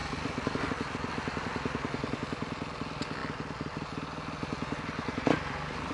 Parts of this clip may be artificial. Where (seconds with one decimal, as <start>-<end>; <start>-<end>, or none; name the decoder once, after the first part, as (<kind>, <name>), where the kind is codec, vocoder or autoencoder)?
none